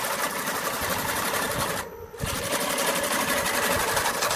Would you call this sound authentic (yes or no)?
yes